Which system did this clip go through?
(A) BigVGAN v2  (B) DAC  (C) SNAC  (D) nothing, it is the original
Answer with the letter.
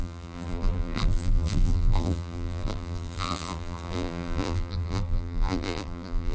A